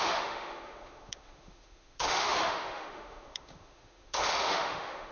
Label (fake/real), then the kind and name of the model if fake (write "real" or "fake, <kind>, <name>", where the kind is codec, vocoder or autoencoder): fake, autoencoder, DAC-VAE